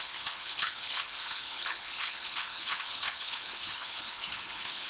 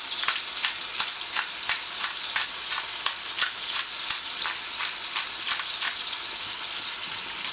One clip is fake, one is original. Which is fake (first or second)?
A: first